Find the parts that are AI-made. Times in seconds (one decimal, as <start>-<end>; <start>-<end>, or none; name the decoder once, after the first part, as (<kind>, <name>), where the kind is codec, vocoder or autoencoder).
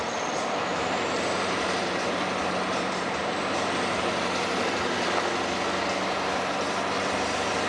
0.7-5.3 (vocoder, BigVGAN v2)